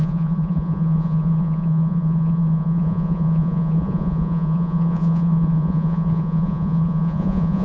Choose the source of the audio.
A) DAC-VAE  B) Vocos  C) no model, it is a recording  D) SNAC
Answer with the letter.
B